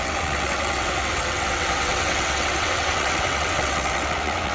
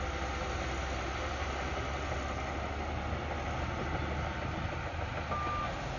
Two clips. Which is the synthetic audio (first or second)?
first